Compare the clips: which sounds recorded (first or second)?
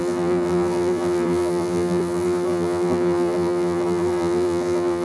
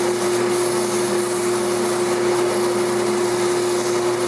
second